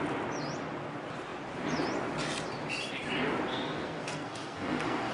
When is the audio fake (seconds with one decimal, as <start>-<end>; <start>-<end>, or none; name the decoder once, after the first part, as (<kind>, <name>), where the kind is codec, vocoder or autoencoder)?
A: 3.5-5.1 (codec, SNAC)